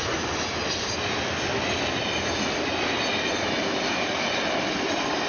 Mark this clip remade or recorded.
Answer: recorded